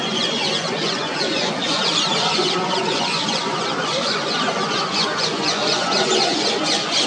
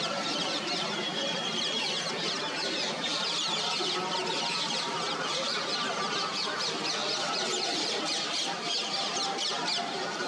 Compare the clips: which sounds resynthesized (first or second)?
first